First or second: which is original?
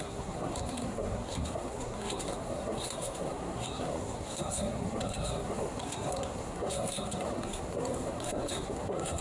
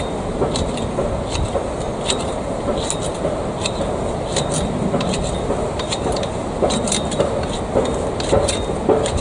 second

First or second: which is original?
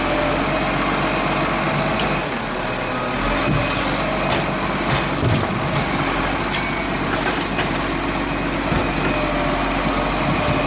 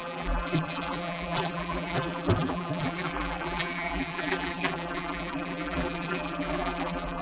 first